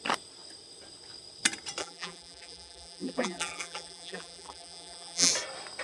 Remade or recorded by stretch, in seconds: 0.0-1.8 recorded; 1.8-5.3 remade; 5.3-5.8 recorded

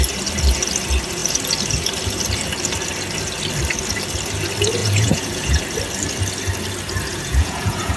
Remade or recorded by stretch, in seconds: 0.0-4.8 recorded; 4.8-5.6 remade; 5.6-7.1 recorded; 7.1-8.0 remade

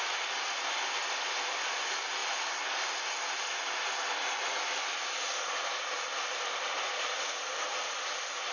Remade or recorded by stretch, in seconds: 0.0-8.5 recorded

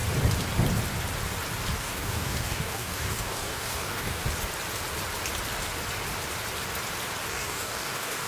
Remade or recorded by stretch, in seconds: 0.0-1.8 recorded; 1.8-4.2 remade; 4.2-7.3 recorded; 7.3-8.3 remade

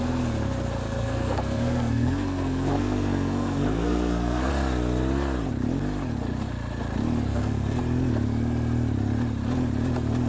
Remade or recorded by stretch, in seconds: 0.0-0.8 recorded; 0.8-4.5 remade; 4.5-7.3 recorded; 7.3-7.8 remade; 7.8-10.3 recorded